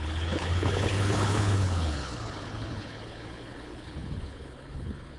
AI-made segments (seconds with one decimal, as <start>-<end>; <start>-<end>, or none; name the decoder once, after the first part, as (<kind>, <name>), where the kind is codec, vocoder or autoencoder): 0.0-5.2 (codec, HILCodec)

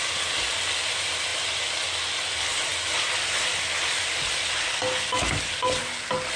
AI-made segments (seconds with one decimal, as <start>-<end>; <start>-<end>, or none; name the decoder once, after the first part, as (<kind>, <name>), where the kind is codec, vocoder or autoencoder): none

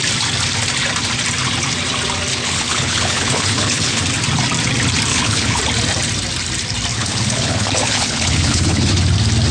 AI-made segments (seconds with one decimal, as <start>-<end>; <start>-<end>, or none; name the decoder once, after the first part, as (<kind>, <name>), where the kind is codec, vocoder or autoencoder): 2.3-4.0 (codec, HILCodec); 5.1-5.6; 6.9-8.9

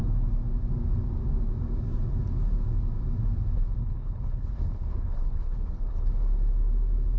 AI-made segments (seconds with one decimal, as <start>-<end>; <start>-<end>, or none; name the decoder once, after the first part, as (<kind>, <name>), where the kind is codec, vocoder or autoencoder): 3.8-6.1 (codec, HILCodec)